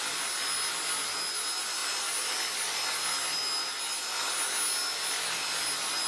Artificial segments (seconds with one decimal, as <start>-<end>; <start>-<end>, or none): none